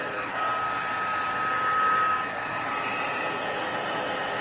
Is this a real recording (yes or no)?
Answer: yes